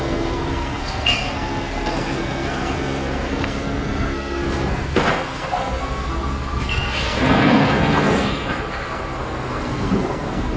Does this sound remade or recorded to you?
remade